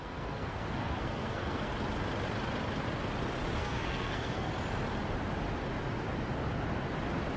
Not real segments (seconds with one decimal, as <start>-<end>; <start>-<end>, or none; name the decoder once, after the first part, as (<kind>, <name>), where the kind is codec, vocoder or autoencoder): 0.0-1.7 (codec, SNAC); 3.6-4.5